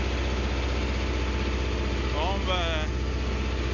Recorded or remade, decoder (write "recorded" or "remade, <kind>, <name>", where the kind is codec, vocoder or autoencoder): recorded